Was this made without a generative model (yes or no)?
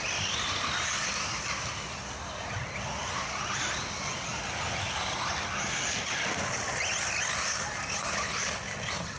yes